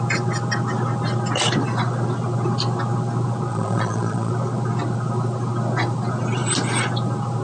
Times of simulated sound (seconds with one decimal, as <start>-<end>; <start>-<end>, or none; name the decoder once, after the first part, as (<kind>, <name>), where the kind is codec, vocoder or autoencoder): 3.5-4.3 (vocoder, Vocos)